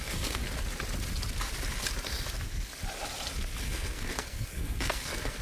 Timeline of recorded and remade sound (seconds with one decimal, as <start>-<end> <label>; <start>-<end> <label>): 0.0-0.4 remade; 0.4-3.6 recorded; 3.6-5.4 remade